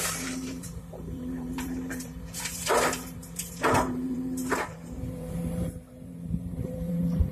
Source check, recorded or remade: remade